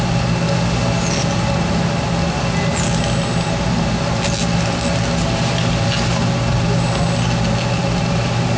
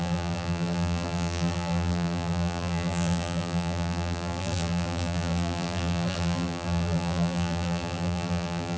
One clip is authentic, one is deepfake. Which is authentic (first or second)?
first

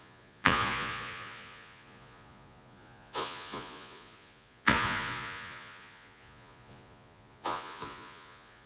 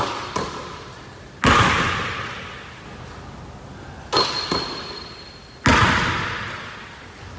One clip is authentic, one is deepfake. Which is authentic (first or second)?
second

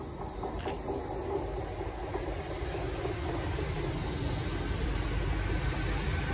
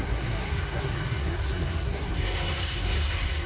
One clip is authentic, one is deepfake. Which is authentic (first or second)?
first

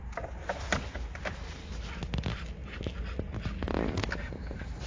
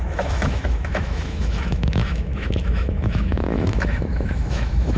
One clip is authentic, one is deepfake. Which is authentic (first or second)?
first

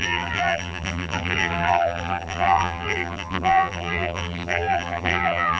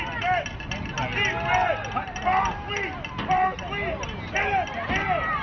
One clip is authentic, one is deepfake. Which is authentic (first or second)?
second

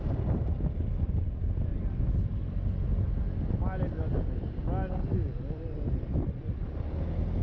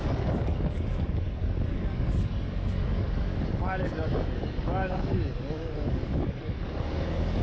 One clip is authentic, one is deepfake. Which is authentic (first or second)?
first